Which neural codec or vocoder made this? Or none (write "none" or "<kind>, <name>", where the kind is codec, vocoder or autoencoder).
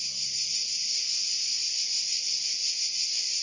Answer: none